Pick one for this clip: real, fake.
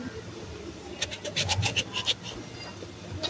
real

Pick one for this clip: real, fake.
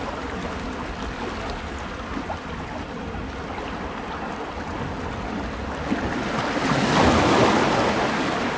real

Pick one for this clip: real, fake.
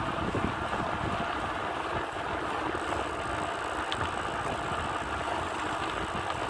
real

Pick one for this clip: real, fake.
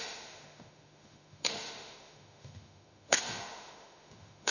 fake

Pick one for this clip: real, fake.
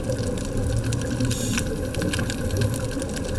real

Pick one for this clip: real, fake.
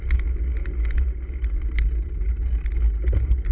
real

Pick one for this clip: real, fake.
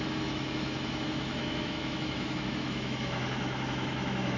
fake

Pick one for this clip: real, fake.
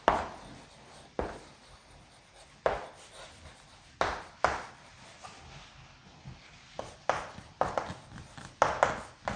real